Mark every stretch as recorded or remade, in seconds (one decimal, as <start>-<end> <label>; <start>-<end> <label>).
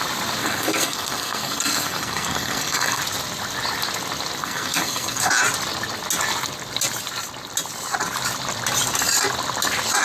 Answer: 0.0-0.4 recorded; 0.4-3.0 remade; 3.0-4.4 recorded; 4.4-5.3 remade; 5.3-10.0 recorded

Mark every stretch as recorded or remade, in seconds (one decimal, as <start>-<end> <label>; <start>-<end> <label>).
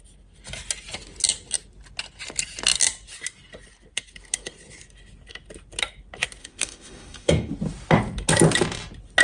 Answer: 0.0-6.4 recorded; 6.4-7.5 remade; 7.5-9.2 recorded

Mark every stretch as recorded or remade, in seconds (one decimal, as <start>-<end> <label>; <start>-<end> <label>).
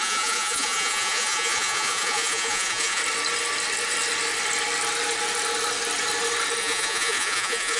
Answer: 0.0-3.0 remade; 3.0-6.6 recorded; 6.6-7.8 remade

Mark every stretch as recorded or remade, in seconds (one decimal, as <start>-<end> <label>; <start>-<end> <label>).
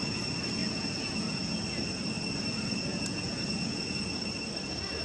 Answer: 0.0-0.6 recorded; 0.6-1.6 remade; 1.6-2.9 recorded; 2.9-4.0 remade; 4.0-5.0 recorded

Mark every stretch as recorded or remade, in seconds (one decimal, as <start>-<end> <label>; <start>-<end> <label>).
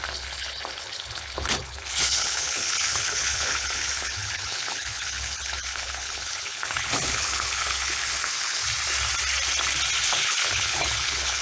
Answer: 0.0-8.6 remade; 8.6-10.1 recorded; 10.1-11.4 remade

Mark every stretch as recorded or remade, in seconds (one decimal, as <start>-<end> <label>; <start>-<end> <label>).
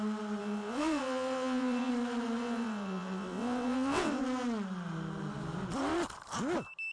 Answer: 0.0-0.4 recorded; 0.4-1.9 remade; 1.9-2.4 recorded; 2.4-4.2 remade; 4.2-6.9 recorded